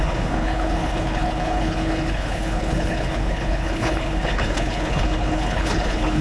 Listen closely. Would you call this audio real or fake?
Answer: fake